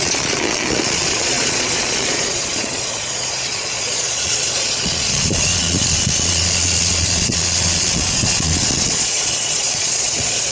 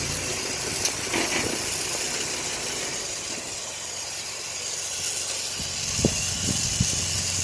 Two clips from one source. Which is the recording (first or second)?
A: second